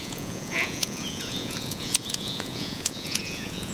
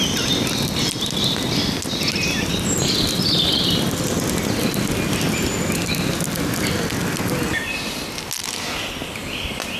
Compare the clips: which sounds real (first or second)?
second